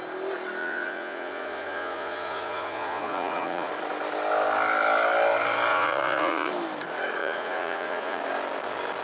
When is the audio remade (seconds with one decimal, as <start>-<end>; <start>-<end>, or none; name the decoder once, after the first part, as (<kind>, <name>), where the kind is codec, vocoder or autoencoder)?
0.6-3.7 (vocoder, Vocos); 5.7-6.5; 7.2-8.2